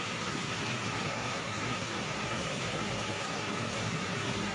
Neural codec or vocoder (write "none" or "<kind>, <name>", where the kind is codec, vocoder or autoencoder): codec, SNAC